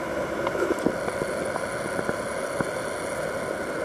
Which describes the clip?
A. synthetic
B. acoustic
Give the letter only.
B